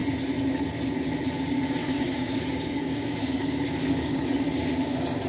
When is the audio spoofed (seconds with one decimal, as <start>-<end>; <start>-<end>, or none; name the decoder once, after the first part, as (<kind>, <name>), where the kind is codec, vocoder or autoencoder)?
1.8-4.2 (codec, DAC)